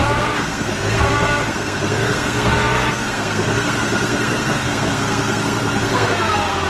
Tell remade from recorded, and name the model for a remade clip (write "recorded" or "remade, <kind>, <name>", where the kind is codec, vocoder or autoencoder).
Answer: remade, codec, SNAC